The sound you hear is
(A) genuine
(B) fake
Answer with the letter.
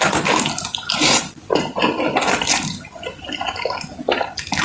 A